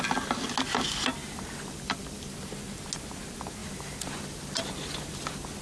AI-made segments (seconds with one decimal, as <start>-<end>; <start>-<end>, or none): 1.2-2.3; 3.6-5.6